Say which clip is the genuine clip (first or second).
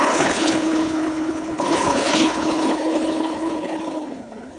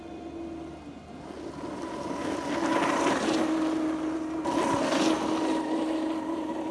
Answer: second